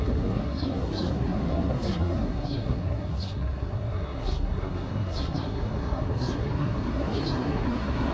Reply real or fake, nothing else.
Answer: fake